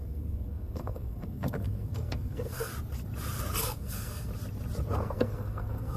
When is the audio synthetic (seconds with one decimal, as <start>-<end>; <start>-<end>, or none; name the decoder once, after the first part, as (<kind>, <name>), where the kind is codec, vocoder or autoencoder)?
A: 0.0-2.7 (codec, SNAC); 3.6-4.3; 4.9-6.0